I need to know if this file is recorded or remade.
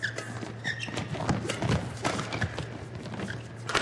recorded